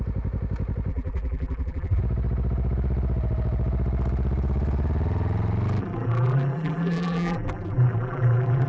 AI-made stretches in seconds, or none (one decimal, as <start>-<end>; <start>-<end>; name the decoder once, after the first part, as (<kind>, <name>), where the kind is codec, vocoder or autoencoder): 0.9-2.0 (vocoder, BigVGAN v2); 5.8-8.7